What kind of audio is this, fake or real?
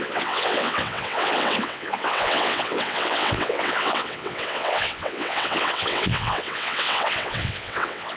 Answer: fake